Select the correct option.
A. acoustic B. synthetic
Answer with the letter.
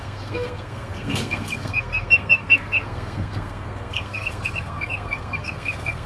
B